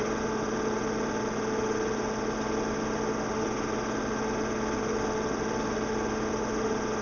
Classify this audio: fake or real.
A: real